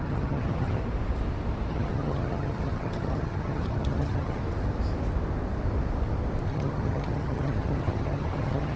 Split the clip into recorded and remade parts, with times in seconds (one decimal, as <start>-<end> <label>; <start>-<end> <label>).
0.0-0.8 remade; 0.8-1.7 recorded; 1.7-4.4 remade; 4.4-6.5 recorded; 6.5-8.8 remade